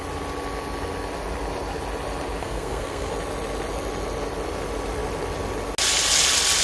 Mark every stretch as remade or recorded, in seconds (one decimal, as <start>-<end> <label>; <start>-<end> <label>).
0.0-2.4 recorded; 2.4-3.1 remade; 3.1-6.6 recorded